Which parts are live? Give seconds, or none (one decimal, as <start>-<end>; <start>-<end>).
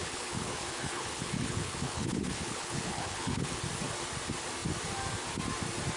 3.6-6.0